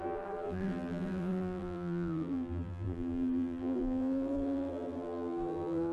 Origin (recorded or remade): remade